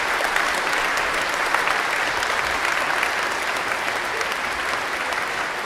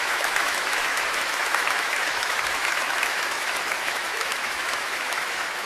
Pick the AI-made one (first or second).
second